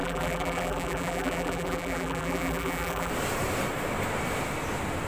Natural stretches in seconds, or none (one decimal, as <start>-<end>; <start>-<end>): 3.1-5.1